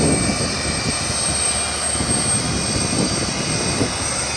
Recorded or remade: recorded